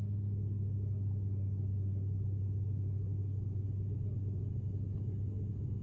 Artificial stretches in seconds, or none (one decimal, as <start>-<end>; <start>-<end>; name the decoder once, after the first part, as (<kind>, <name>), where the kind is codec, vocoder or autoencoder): none